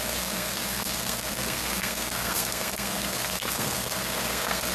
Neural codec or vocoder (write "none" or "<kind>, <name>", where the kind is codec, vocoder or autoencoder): codec, SNAC